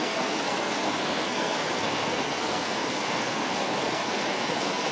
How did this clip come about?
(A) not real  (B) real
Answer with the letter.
A